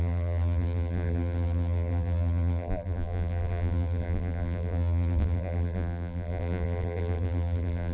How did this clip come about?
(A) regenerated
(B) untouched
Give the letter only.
A